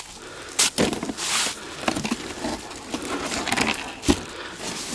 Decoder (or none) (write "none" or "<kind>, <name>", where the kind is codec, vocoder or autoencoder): none